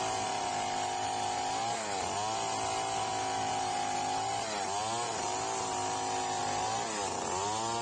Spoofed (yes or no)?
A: no